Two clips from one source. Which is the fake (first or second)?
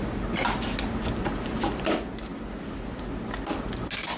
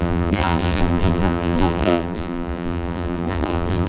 second